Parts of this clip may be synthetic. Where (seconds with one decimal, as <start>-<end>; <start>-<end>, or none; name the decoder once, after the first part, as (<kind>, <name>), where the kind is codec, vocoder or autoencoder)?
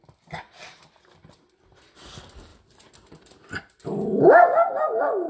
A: none